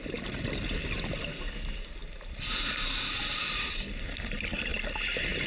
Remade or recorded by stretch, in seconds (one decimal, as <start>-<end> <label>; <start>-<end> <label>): 0.0-5.5 recorded